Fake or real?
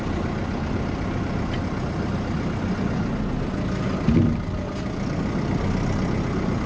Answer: real